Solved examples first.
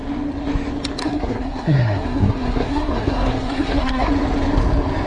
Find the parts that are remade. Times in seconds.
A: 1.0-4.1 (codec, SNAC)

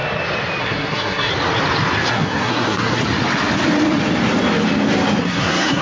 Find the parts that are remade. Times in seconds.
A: 0.6-1.3 (codec, SNAC); 2.1-3.0; 5.2-5.8

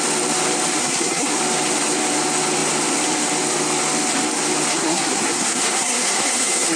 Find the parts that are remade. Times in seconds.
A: 0.8-1.4 (codec, SNAC); 4.7-6.8

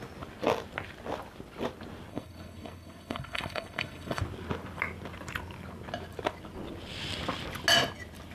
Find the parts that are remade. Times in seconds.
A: 2.1-4.2 (codec, SNAC)

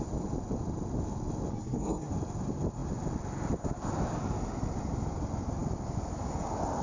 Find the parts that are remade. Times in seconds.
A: 1.5-2.1 (codec, SNAC)

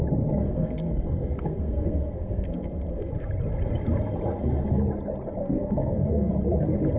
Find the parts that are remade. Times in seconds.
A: 0.4-3.1 (codec, SNAC); 5.4-6.3

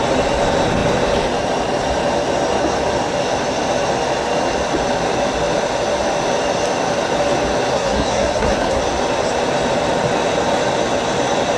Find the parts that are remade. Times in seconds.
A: 7.7-8.8 (codec, SNAC)